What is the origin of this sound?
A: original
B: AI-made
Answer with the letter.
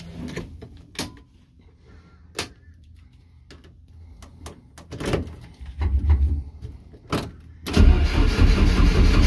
A